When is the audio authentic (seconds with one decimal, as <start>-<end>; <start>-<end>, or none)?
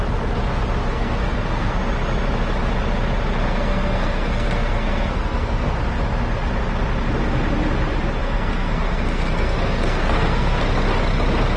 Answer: 0.0-0.9; 1.8-3.4; 5.7-8.2; 10.6-11.6